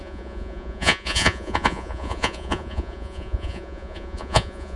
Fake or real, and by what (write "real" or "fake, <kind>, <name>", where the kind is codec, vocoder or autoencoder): fake, vocoder, Vocos